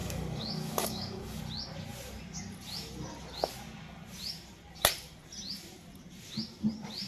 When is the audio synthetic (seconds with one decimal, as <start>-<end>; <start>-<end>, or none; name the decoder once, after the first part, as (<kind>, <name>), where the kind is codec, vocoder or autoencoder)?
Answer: 0.0-1.4 (codec, DAC)